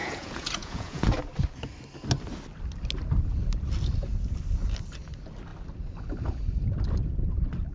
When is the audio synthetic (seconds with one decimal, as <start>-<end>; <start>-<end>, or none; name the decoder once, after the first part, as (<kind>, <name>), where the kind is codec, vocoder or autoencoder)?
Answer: 0.0-1.2 (vocoder, Vocos)